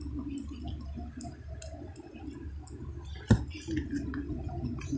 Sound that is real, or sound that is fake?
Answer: real